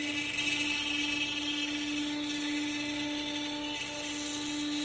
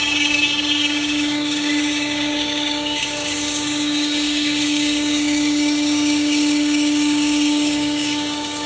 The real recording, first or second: first